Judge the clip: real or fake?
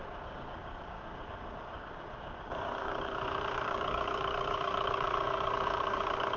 fake